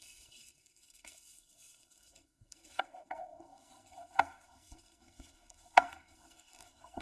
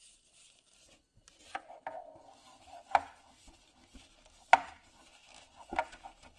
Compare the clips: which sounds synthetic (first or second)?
first